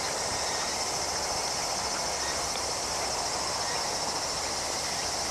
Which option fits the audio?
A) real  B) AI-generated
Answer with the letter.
A